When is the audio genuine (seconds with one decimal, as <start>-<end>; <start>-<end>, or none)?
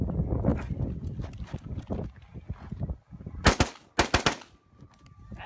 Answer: 0.0-5.5